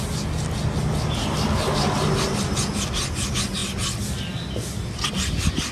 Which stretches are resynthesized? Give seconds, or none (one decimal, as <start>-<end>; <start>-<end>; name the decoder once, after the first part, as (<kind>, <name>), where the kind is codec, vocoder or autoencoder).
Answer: none